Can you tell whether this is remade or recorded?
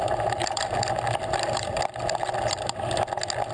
recorded